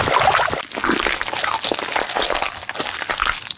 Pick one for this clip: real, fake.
real